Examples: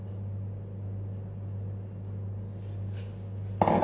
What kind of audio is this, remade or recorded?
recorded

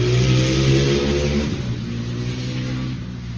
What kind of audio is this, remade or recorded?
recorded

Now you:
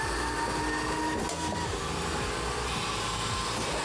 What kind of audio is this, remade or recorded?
recorded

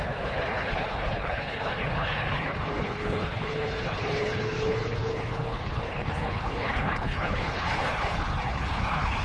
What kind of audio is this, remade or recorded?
remade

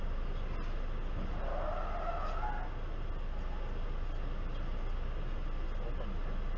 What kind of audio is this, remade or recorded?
recorded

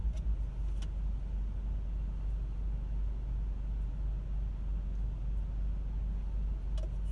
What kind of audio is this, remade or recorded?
recorded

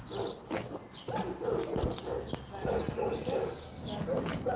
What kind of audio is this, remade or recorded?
recorded